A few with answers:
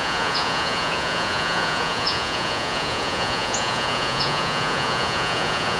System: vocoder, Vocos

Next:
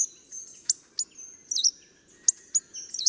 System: none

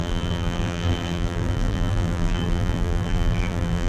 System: vocoder, BigVGAN v2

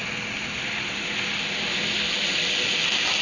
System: none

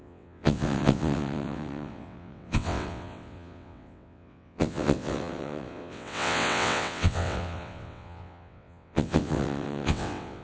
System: vocoder, WaveNeXt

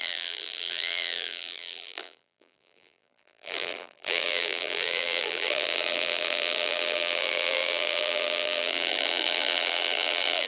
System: vocoder, BigVGAN v2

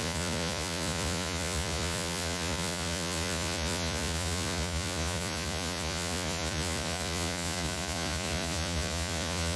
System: vocoder, Vocos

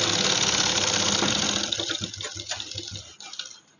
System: none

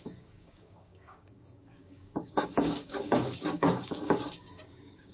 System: codec, DAC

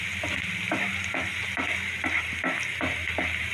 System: none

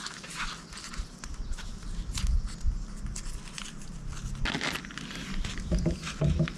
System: none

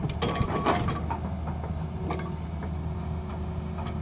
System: none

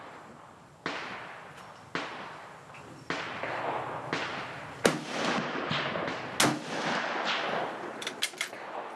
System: none